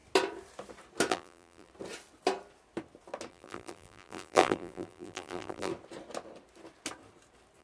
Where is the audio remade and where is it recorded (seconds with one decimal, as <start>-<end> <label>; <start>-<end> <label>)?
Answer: 0.0-1.1 recorded; 1.1-1.7 remade; 1.7-3.3 recorded; 3.3-5.7 remade; 5.7-7.6 recorded